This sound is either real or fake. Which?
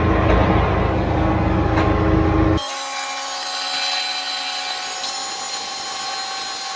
real